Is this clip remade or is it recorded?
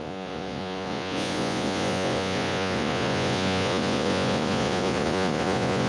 remade